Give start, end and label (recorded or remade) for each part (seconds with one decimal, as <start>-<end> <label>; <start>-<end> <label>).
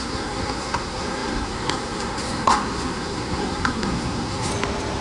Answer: 0.0-4.5 remade; 4.5-5.0 recorded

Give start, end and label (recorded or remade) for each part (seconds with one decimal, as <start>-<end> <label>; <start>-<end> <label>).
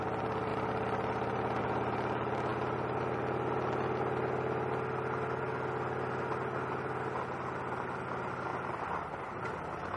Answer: 0.0-10.0 recorded